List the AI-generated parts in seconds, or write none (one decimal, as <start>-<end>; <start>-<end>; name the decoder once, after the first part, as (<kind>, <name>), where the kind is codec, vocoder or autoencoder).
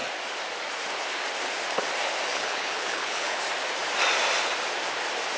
2.3-3.4 (codec, HILCodec)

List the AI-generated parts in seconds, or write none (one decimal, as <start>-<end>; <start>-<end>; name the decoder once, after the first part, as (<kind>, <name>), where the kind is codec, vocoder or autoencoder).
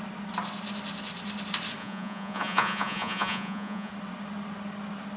1.8-3.9 (vocoder, Vocos)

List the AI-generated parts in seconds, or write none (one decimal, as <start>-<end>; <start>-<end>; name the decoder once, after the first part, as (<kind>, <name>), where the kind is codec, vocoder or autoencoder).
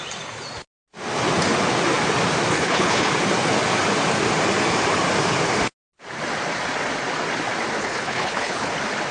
2.5-3.1 (codec, HILCodec); 7.8-8.7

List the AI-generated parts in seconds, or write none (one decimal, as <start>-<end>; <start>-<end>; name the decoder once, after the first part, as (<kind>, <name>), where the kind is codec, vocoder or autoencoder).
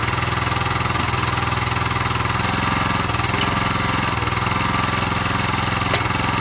none